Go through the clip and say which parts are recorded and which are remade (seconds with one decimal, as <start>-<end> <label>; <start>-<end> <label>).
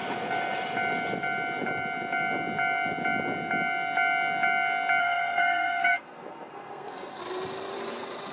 0.0-5.0 recorded; 5.0-7.2 remade; 7.2-8.3 recorded